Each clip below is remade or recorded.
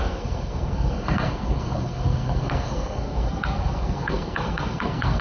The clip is remade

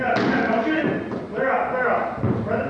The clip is recorded